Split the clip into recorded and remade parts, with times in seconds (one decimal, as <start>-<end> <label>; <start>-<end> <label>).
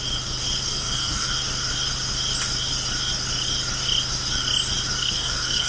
0.0-0.7 recorded; 0.7-1.3 remade; 1.3-5.0 recorded; 5.0-5.7 remade